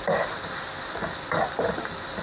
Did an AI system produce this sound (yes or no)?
no